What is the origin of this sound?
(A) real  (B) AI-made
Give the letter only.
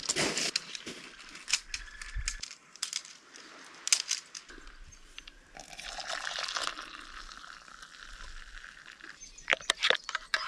A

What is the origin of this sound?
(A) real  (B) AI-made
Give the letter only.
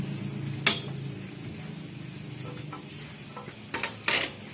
A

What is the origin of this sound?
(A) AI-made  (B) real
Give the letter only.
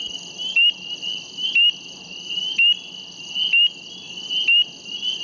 B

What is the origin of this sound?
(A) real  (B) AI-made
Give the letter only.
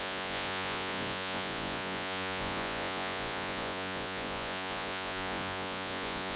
B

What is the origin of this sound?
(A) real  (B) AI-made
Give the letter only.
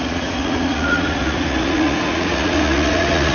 B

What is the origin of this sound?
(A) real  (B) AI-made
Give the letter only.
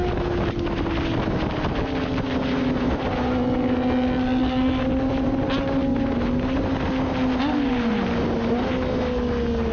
A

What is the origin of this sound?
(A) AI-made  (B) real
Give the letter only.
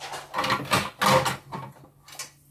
B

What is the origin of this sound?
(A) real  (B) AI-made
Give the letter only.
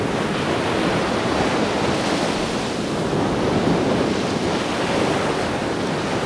A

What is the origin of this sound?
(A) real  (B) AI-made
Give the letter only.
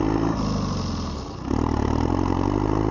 A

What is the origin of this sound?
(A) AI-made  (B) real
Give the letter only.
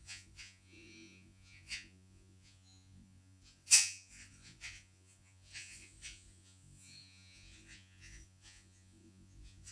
A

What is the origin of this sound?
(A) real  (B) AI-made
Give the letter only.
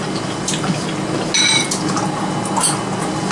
A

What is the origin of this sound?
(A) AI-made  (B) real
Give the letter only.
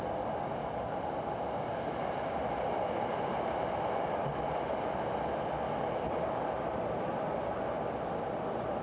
B